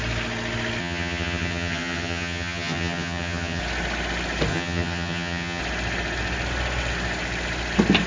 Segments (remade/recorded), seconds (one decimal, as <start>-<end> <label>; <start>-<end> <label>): 0.0-0.8 recorded; 0.8-3.6 remade; 3.6-4.5 recorded; 4.5-5.6 remade; 5.6-8.1 recorded